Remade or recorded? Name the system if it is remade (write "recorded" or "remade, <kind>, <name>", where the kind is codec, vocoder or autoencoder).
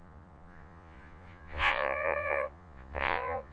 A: remade, vocoder, Vocos